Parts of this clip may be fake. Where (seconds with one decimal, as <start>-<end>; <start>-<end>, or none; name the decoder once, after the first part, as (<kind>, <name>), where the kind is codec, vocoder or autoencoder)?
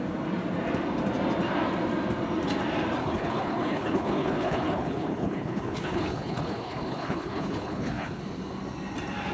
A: 3.0-8.2 (codec, HILCodec)